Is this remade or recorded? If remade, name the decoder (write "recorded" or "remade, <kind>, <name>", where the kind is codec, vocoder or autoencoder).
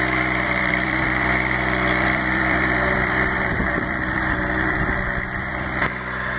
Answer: remade, vocoder, BigVGAN v2